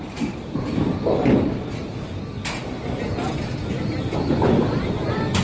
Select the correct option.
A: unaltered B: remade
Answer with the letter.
B